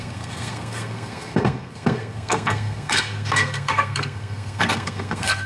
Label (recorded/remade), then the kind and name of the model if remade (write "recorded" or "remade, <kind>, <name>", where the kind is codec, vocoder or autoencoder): remade, codec, SNAC